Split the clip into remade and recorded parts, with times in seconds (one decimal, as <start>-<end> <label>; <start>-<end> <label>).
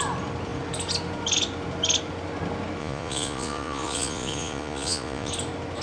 0.0-2.8 recorded; 2.8-5.3 remade; 5.3-5.8 recorded